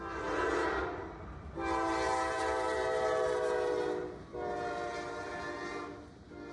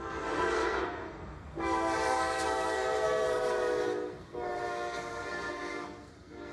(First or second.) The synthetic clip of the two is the second